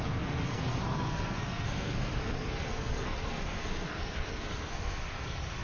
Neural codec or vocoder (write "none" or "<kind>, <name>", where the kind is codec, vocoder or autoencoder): codec, SNAC